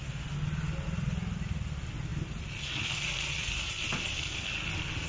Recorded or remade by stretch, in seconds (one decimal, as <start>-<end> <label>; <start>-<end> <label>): 0.0-5.1 recorded